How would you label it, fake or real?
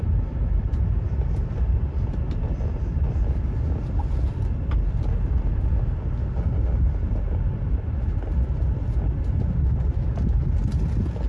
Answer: real